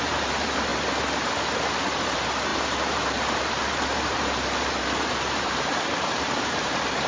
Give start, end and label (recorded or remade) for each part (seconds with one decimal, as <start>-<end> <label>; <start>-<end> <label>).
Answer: 0.0-0.7 remade; 0.7-1.7 recorded; 1.7-7.1 remade

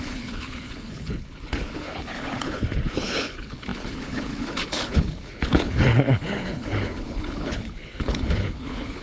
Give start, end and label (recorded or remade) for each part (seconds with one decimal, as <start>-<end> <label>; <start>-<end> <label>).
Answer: 0.0-9.0 remade

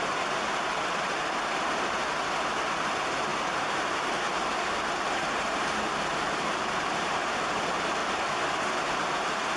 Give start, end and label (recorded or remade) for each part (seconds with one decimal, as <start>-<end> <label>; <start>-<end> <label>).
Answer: 0.0-2.0 remade; 2.0-2.7 recorded; 2.7-9.6 remade

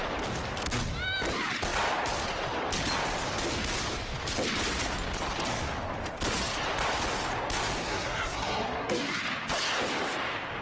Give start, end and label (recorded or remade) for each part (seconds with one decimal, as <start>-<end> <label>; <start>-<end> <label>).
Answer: 0.0-7.8 recorded; 7.8-9.2 remade; 9.2-10.6 recorded